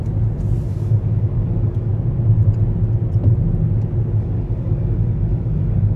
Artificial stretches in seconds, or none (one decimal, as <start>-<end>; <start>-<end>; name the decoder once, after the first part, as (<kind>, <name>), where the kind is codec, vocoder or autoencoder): 0.7-1.9 (codec, DAC); 4.2-6.0